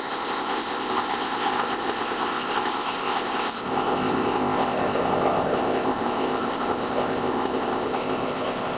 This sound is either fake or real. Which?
fake